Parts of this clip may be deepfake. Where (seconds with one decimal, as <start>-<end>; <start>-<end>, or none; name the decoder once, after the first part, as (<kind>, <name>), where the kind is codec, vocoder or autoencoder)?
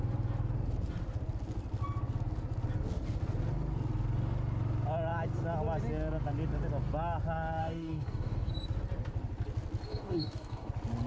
7.6-8.5 (codec, DAC); 9.9-10.7